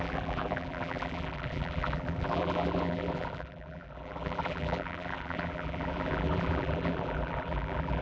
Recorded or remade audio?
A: remade